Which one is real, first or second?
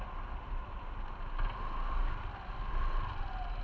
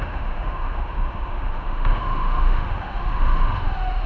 first